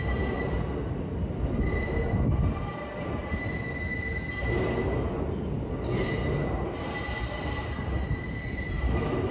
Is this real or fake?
real